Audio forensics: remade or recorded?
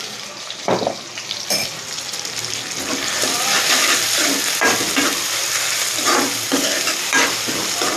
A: remade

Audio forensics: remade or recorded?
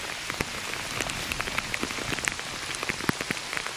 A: recorded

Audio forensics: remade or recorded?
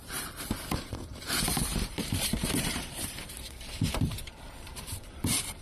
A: remade